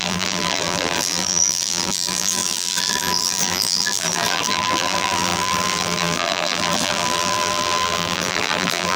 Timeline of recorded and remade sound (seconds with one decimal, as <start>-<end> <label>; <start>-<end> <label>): 0.0-9.0 remade